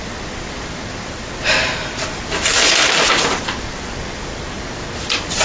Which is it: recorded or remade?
recorded